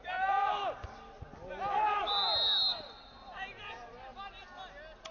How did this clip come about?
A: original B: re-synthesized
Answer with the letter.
A